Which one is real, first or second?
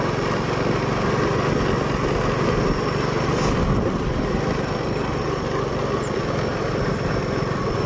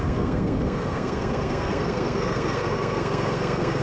first